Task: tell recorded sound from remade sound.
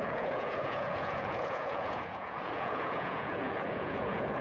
remade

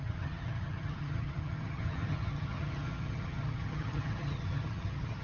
remade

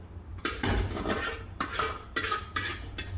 remade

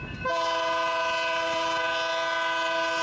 recorded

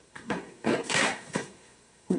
remade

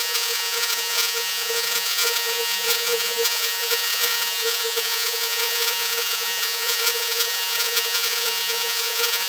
remade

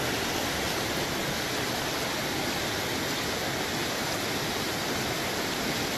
recorded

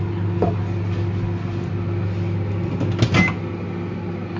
recorded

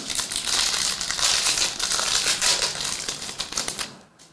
recorded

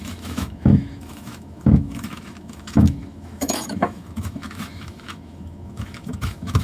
remade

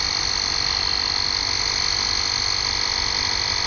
recorded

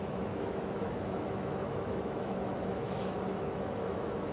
remade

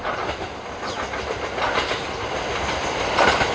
recorded